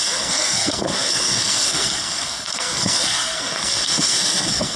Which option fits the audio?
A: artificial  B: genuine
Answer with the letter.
A